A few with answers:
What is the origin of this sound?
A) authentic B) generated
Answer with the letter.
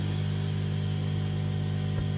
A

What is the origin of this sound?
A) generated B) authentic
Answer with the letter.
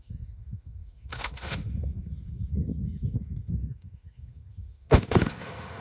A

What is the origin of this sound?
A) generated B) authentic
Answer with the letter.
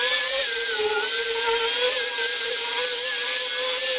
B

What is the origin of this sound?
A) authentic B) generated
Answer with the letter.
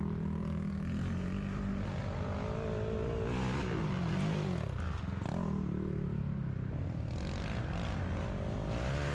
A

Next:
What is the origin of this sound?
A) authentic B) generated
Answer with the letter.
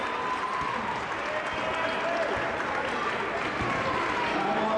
A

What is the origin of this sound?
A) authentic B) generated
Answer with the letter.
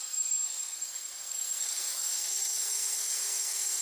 B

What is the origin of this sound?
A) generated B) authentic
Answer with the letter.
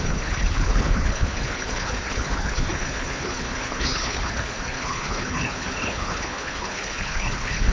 A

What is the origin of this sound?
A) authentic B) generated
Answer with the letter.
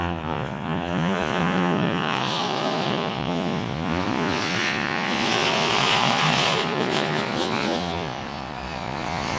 B